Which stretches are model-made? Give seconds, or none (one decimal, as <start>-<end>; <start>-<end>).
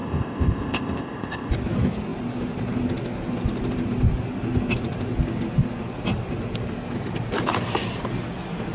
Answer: 0.0-1.5